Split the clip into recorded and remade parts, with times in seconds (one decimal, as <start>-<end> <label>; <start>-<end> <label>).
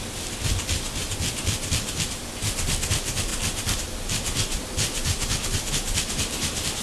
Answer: 0.0-6.8 recorded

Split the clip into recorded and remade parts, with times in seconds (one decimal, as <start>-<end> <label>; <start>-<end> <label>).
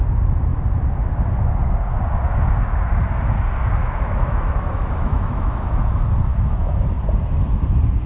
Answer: 0.0-3.8 recorded; 3.8-5.7 remade; 5.7-6.3 recorded; 6.3-7.0 remade; 7.0-8.1 recorded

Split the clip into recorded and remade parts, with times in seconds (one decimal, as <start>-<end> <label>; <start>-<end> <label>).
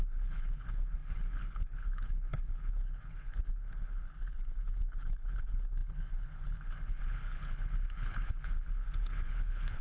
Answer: 0.0-9.8 remade